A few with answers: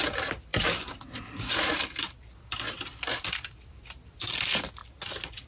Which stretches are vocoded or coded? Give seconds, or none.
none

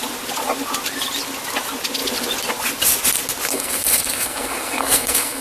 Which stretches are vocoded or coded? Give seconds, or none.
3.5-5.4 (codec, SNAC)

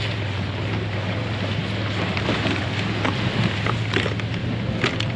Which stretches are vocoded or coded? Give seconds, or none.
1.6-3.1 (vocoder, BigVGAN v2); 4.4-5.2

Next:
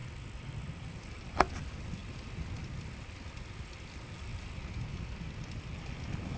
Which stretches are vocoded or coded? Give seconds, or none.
none

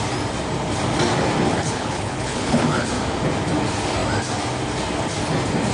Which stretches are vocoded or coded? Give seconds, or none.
1.5-2.9 (codec, HILCodec)